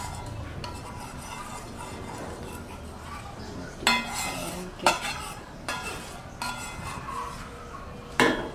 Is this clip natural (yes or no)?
yes